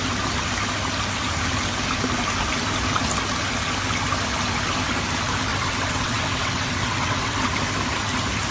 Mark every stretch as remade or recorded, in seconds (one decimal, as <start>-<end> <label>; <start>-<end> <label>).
0.0-5.5 recorded; 5.5-7.4 remade; 7.4-8.5 recorded